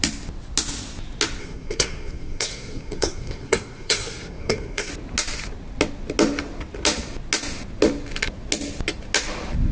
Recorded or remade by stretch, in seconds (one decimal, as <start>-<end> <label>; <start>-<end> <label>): 0.0-1.4 recorded; 1.4-4.9 remade; 4.9-9.7 recorded